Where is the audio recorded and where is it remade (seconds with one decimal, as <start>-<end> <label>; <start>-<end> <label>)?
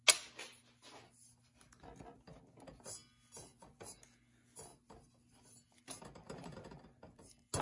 0.0-7.6 recorded